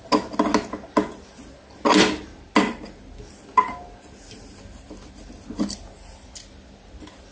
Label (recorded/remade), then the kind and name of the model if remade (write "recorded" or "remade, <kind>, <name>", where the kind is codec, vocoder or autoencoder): recorded